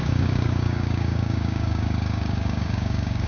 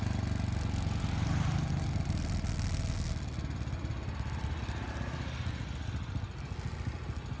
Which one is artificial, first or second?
first